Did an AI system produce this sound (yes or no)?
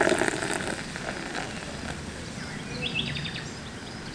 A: no